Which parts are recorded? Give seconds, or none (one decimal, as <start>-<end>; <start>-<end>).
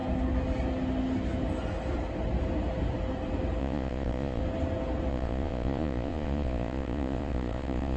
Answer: 0.0-3.6; 4.4-5.1